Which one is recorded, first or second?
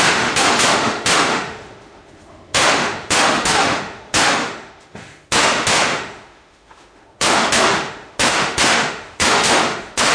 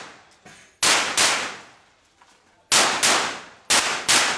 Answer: second